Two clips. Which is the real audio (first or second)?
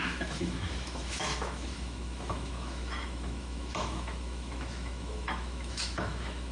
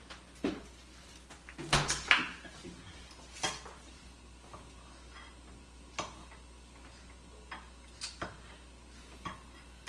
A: second